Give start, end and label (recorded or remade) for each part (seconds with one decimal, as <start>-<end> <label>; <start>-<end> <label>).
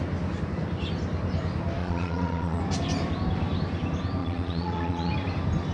0.0-1.8 recorded; 1.8-2.6 remade; 2.6-4.2 recorded; 4.2-5.1 remade; 5.1-5.7 recorded